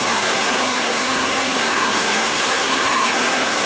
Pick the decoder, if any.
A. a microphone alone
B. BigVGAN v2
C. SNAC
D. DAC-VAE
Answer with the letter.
C